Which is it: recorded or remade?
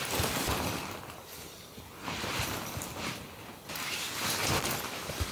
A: remade